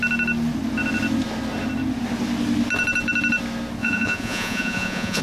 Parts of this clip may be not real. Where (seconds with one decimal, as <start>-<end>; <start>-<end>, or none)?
3.8-5.2

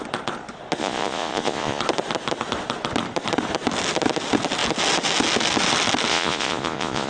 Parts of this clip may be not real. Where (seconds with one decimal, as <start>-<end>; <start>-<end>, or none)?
0.8-1.8; 6.1-7.1

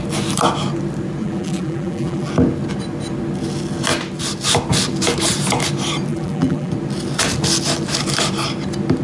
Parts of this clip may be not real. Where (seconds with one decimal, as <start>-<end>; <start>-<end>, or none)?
1.2-2.3; 6.1-6.7

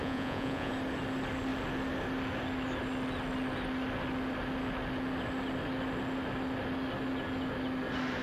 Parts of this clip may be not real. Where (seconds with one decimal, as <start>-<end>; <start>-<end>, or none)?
0.0-0.7

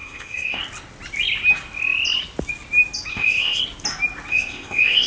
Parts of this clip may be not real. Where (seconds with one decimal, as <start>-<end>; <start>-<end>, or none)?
0.0-0.6; 3.1-3.6; 4.3-5.1

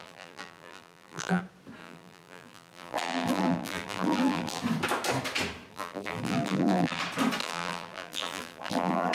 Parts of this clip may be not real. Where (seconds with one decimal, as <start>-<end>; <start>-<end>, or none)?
0.0-1.4; 1.8-4.6; 5.7-7.0; 7.4-9.1

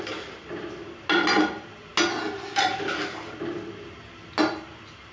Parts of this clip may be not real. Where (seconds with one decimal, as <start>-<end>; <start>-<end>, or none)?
none